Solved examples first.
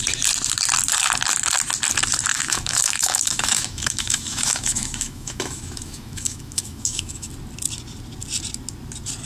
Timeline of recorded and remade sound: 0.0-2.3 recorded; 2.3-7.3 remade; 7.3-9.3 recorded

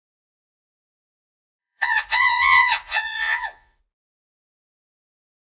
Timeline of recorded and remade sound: 0.0-1.6 recorded; 1.6-3.8 remade; 3.8-5.4 recorded

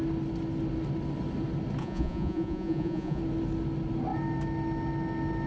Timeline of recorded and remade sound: 0.0-1.8 recorded; 1.8-3.2 remade; 3.2-5.5 recorded

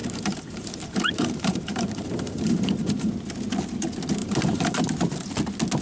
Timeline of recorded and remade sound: 0.0-3.1 remade; 3.1-4.2 recorded; 4.2-4.8 remade; 4.8-5.8 recorded